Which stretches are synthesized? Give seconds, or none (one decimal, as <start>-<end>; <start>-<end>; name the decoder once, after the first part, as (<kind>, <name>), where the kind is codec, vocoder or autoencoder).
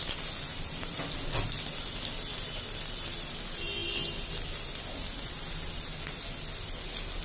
0.5-1.0 (vocoder, BigVGAN v2)